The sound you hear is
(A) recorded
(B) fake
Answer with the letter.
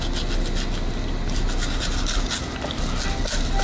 A